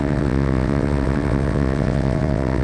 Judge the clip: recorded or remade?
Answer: remade